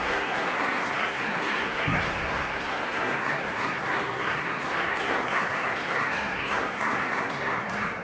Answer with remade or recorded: remade